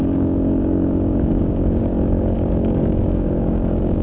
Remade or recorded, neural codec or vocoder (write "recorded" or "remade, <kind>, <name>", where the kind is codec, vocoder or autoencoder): remade, codec, DAC